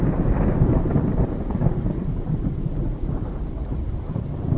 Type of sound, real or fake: real